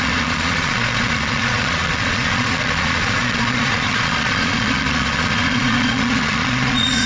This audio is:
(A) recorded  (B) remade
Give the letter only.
B